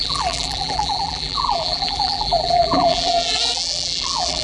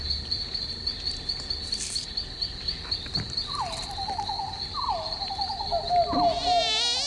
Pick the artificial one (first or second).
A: first